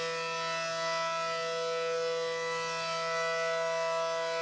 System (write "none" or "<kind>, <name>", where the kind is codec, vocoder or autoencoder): none